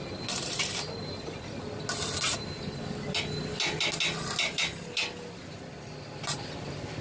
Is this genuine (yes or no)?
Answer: yes